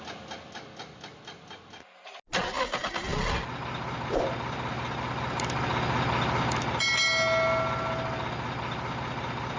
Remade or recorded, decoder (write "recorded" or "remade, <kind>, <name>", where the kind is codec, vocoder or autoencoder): recorded